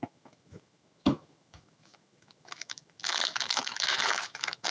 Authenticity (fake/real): fake